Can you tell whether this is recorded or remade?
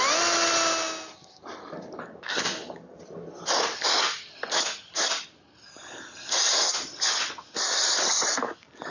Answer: recorded